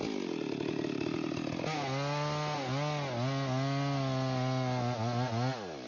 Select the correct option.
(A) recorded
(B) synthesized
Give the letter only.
A